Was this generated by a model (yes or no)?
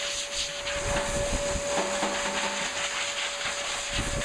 no